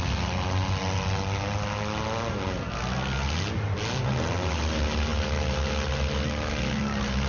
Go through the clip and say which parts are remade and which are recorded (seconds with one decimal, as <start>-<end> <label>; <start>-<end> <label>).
0.0-7.3 recorded